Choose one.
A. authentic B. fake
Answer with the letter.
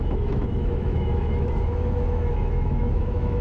B